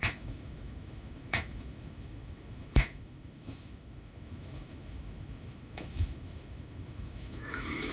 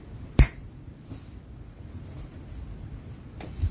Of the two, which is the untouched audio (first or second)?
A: second